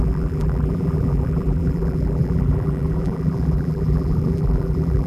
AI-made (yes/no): yes